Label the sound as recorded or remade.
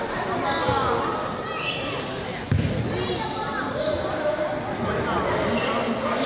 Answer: recorded